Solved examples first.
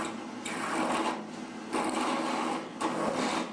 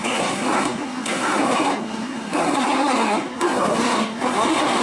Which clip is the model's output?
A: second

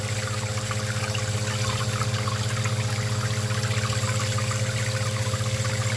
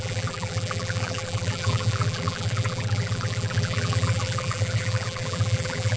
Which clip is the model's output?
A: second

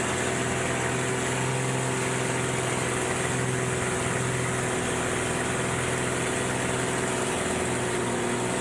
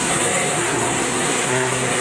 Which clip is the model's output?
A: second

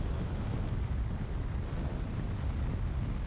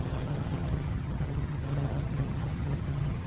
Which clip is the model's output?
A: second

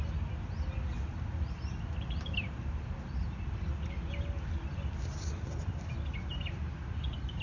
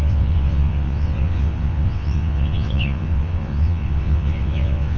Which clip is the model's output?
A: second